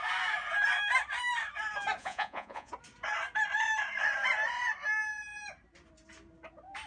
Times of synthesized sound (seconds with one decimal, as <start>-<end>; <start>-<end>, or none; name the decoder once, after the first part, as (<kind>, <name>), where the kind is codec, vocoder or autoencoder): 2.0-2.7 (vocoder, Vocos)

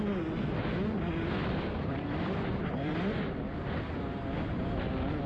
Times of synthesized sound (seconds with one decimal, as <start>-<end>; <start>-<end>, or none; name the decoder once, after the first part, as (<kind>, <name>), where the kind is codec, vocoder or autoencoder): 1.4-3.7 (vocoder, BigVGAN v2)